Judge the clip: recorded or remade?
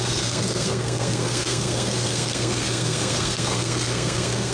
remade